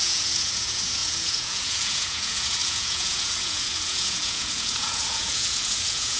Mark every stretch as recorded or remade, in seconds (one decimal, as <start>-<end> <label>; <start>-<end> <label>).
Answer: 0.0-6.2 remade